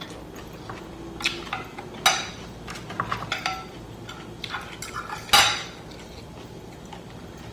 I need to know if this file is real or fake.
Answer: real